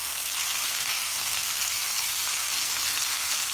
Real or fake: fake